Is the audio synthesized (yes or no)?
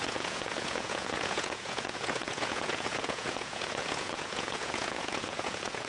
yes